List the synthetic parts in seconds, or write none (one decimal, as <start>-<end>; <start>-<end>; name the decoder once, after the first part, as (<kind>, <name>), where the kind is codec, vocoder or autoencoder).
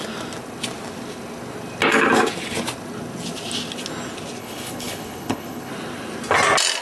4.4-5.7 (codec, HILCodec)